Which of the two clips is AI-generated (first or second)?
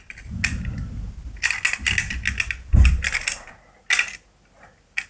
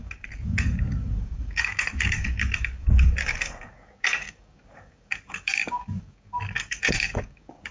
second